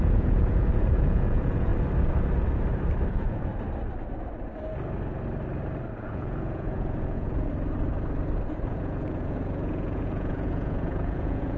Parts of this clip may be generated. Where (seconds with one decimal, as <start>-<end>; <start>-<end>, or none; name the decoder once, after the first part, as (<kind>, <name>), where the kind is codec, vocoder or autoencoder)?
0.0-1.7 (vocoder, Vocos); 3.1-3.5; 6.0-7.5; 8.7-11.6